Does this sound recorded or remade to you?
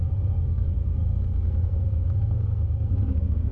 remade